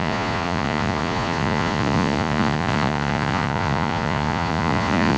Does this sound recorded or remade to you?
remade